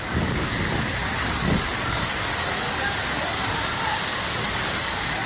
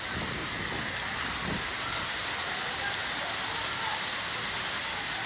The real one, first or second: second